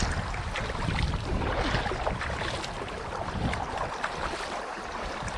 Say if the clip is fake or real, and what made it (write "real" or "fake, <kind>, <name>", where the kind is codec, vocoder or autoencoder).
real